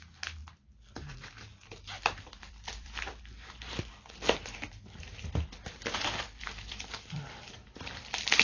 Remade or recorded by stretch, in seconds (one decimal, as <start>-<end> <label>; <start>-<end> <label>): 0.0-0.4 recorded; 0.4-3.9 remade; 3.9-5.5 recorded; 5.5-8.0 remade; 8.0-8.4 recorded